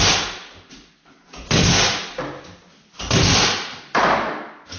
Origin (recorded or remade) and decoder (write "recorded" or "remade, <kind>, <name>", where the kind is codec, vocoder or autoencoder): recorded